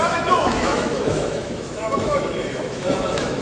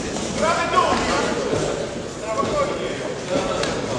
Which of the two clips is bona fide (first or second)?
second